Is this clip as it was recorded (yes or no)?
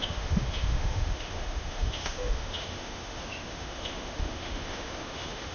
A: no